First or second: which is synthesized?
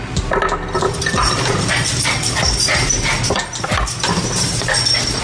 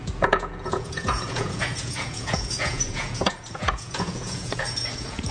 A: second